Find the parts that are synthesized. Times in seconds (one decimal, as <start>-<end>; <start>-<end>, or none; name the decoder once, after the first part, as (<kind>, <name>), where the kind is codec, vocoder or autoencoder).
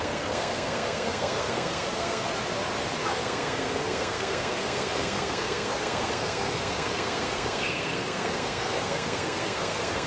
0.0-2.3 (codec, SNAC); 3.0-10.1